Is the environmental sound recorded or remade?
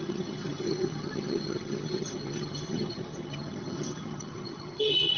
remade